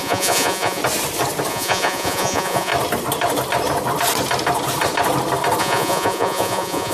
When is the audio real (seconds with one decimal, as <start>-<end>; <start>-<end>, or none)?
0.8-1.5; 2.7-5.6